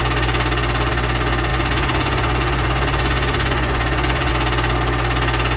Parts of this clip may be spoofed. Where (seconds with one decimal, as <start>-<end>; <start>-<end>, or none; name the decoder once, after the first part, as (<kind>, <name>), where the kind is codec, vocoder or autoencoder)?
1.5-4.3 (vocoder, Vocos)